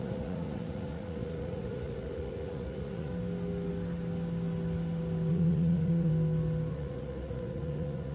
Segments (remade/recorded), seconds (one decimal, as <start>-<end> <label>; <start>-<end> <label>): 0.0-3.1 remade; 3.1-5.3 recorded; 5.3-6.1 remade; 6.1-6.7 recorded; 6.7-8.1 remade